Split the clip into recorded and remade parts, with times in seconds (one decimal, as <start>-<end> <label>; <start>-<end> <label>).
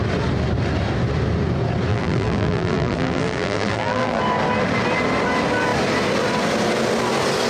0.0-1.9 recorded; 1.9-4.2 remade; 4.2-7.5 recorded